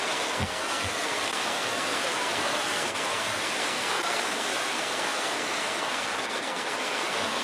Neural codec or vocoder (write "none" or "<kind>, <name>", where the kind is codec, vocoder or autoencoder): codec, SNAC